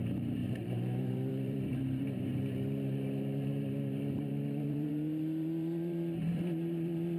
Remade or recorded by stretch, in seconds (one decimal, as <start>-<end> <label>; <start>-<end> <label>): 0.0-7.2 remade